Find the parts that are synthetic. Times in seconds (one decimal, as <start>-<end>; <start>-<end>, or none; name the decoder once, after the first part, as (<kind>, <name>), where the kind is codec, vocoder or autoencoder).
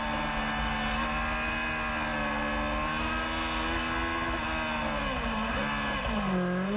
none